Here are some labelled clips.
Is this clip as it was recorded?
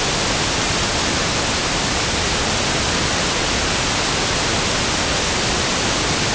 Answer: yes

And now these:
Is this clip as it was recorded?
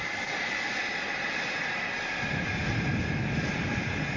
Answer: yes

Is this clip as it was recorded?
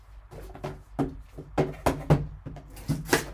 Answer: yes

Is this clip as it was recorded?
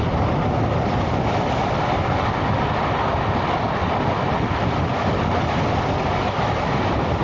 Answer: yes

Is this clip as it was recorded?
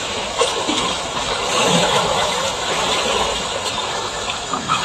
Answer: no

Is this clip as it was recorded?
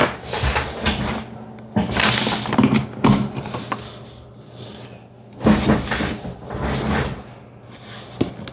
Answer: yes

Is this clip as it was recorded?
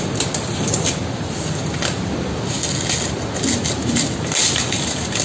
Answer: yes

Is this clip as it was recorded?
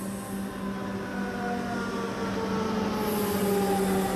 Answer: yes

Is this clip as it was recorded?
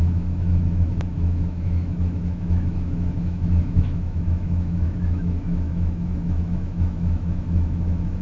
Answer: no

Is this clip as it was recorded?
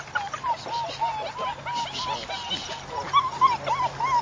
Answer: yes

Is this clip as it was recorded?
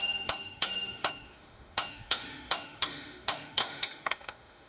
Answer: no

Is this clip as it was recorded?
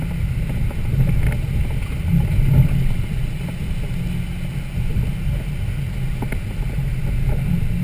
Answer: yes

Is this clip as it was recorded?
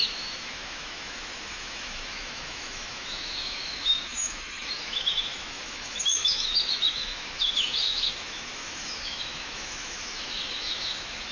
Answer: no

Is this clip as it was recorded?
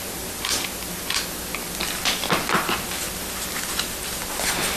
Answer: yes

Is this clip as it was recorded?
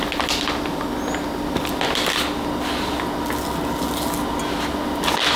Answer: yes